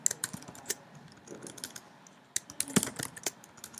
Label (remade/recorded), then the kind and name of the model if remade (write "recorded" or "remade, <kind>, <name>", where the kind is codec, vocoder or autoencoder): recorded